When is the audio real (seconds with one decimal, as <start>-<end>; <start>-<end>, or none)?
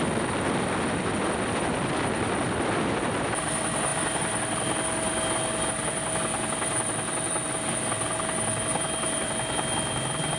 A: 0.0-10.4